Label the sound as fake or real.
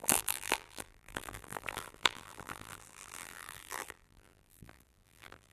fake